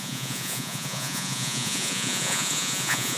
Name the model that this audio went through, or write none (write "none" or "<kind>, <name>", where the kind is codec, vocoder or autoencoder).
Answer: vocoder, Vocos